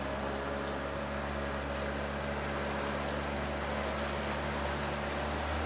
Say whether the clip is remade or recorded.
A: recorded